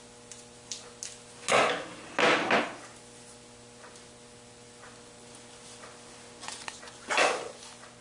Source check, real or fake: real